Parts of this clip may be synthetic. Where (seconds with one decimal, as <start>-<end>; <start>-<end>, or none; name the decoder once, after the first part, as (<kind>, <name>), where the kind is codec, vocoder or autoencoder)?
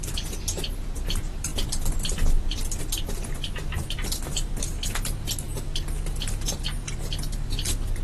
none